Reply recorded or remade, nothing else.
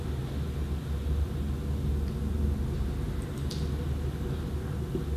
recorded